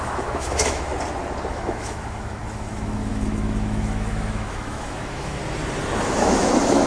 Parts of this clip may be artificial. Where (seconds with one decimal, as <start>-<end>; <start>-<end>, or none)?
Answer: 0.0-0.9; 1.5-5.4; 6.0-6.9